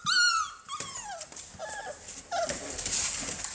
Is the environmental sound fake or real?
real